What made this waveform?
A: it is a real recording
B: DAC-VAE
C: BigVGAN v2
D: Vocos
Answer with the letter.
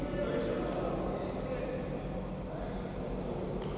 A